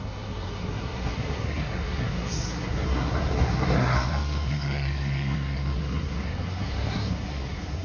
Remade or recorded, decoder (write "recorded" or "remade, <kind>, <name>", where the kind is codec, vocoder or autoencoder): remade, codec, SNAC